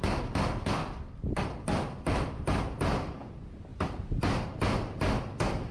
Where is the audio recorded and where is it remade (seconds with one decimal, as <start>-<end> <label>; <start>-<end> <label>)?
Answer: 0.0-0.8 recorded; 0.8-2.6 remade; 2.6-3.7 recorded; 3.7-4.3 remade; 4.3-5.7 recorded